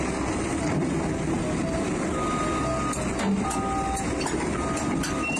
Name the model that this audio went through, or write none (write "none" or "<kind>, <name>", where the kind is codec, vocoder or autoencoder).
none